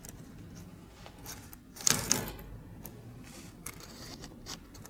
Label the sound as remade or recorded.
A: remade